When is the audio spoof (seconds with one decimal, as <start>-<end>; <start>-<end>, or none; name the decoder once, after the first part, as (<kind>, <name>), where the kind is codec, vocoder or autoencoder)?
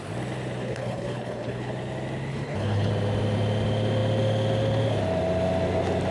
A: 0.6-1.7 (codec, HILCodec); 2.3-2.9